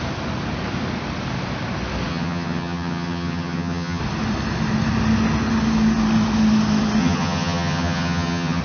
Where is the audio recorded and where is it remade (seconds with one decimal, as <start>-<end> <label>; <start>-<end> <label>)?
0.0-2.1 recorded; 2.1-4.0 remade; 4.0-7.0 recorded; 7.0-8.6 remade